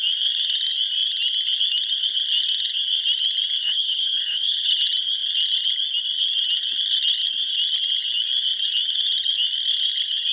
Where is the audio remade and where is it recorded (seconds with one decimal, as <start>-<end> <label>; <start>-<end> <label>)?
0.0-3.6 recorded; 3.6-4.8 remade; 4.8-10.3 recorded